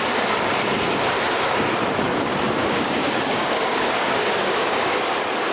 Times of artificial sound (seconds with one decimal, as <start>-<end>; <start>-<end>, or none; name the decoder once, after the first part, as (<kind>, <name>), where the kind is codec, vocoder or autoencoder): 2.6-5.0 (codec, DAC)